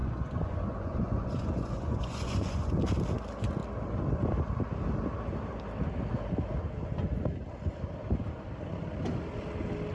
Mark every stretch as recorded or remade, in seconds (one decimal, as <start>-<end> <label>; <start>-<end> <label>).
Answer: 0.0-2.7 remade; 2.7-9.9 recorded